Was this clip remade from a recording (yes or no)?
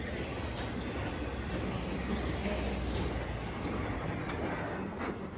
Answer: no